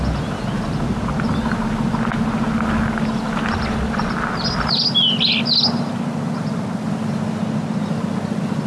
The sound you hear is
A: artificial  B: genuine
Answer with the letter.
B